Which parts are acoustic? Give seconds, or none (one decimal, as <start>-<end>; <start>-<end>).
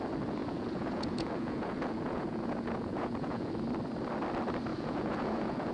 0.0-0.4; 3.5-4.7